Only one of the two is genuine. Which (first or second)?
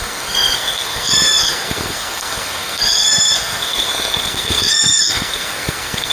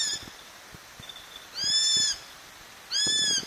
second